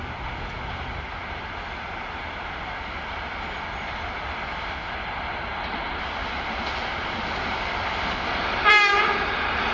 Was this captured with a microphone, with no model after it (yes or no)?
yes